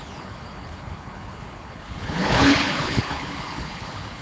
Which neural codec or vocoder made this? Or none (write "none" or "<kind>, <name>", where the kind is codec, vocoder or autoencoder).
codec, HILCodec